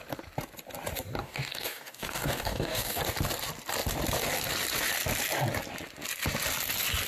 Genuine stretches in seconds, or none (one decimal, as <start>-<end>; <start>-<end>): 0.0-1.2; 3.0-7.1